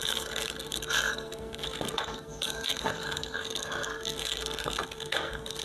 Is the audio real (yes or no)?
no